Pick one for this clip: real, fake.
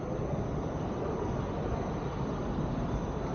real